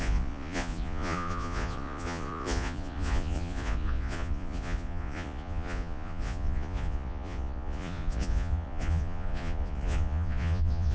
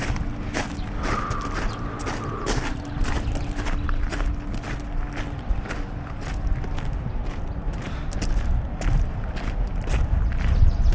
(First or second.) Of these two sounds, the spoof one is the first